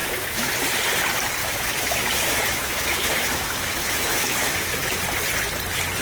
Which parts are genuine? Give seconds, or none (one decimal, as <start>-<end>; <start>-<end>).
0.5-1.4; 5.0-6.0